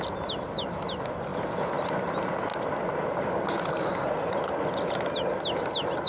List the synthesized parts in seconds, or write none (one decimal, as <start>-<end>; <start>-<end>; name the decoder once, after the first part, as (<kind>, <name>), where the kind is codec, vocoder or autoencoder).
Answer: none